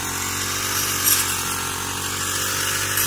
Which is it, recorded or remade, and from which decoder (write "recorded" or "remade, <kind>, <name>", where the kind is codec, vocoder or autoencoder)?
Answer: recorded